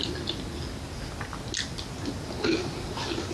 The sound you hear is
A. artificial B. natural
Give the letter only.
B